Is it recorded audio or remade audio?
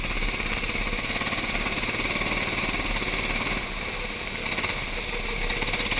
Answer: recorded